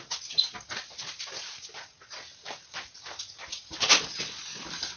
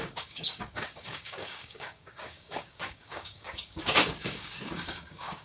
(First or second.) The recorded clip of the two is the first